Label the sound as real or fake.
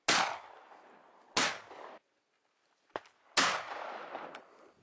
real